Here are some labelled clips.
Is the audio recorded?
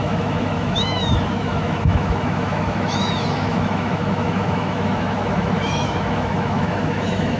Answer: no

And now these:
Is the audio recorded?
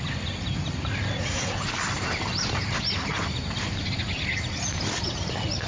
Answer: yes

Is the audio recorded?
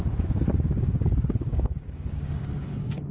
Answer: no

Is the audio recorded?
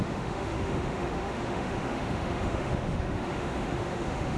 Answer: no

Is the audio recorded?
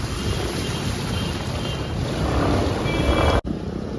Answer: yes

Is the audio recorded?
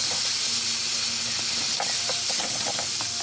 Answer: yes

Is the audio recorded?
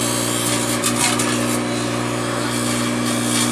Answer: yes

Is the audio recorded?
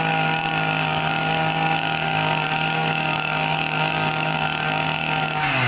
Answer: no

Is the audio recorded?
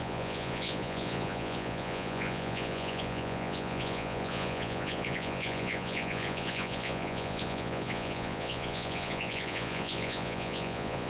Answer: no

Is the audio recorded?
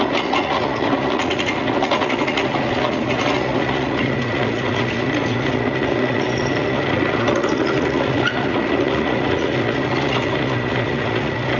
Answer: no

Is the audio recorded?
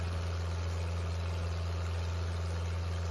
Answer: yes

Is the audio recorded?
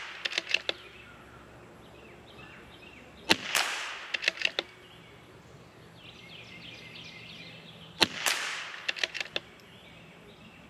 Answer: yes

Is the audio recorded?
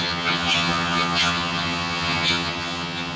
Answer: no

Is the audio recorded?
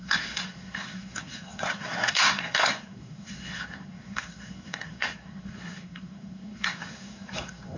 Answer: no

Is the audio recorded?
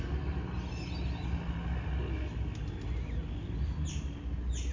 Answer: yes